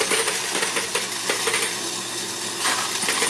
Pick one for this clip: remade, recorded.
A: recorded